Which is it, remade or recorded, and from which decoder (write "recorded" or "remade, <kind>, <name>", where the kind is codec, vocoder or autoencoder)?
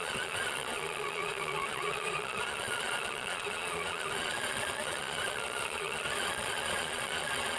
remade, vocoder, Vocos